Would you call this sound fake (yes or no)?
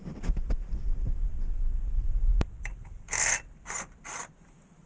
no